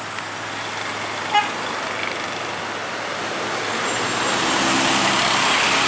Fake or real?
real